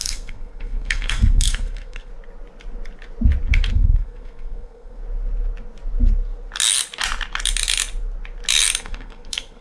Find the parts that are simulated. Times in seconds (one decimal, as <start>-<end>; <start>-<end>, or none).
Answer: 0.0-2.1; 3.7-5.0; 8.8-9.6